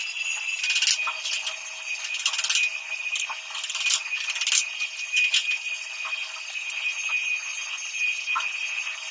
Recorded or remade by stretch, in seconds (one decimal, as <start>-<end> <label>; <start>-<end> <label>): 0.0-9.1 recorded